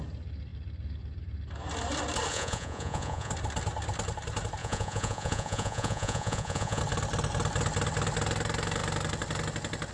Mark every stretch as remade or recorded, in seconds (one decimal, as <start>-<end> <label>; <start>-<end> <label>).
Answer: 0.0-2.3 recorded; 2.3-3.3 remade; 3.3-4.6 recorded; 4.6-6.8 remade; 6.8-9.9 recorded